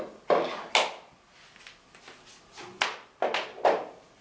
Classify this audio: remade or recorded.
recorded